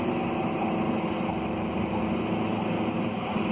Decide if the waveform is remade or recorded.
recorded